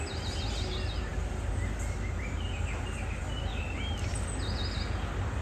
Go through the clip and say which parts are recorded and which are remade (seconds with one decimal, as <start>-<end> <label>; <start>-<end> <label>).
0.0-5.4 recorded